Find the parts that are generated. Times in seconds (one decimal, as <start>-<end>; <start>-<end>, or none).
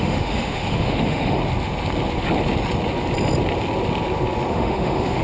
0.0-1.4; 4.5-5.2